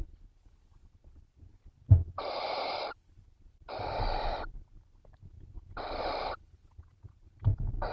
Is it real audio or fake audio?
real